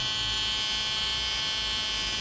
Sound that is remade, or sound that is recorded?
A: recorded